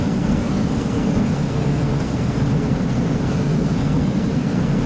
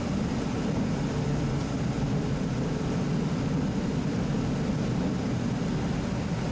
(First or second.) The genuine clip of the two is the second